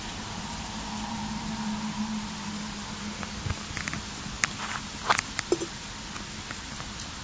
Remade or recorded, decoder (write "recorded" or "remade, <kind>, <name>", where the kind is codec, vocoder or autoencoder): recorded